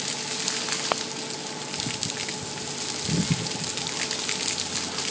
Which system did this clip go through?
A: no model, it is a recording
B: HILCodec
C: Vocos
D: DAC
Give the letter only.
A